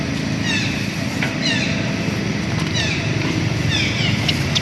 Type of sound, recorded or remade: recorded